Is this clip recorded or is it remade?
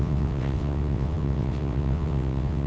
remade